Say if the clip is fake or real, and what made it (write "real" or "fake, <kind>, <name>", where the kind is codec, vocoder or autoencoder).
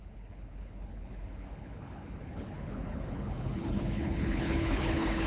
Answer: fake, codec, HILCodec